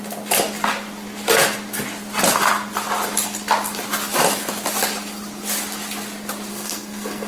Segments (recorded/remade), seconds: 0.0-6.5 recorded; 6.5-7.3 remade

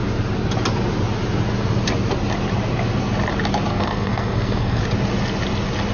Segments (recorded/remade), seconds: 0.0-3.7 recorded; 3.7-4.8 remade; 4.8-5.9 recorded

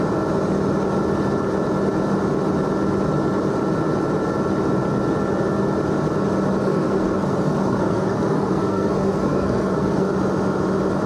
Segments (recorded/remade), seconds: 0.0-6.6 recorded; 6.6-10.1 remade; 10.1-11.1 recorded